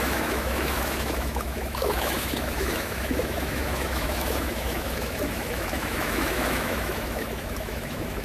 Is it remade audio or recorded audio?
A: remade